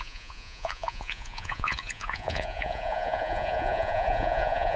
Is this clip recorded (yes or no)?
no